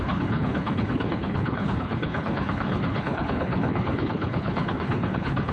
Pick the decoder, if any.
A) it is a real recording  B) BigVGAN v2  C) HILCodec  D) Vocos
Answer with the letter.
C